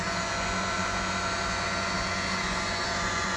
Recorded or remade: remade